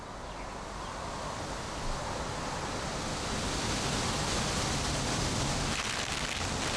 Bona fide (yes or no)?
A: yes